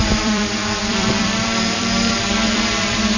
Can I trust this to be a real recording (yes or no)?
no